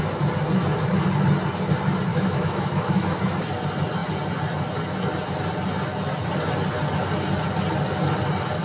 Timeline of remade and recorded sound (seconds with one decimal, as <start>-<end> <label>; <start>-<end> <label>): 0.0-2.1 recorded; 2.1-3.2 remade; 3.2-8.6 recorded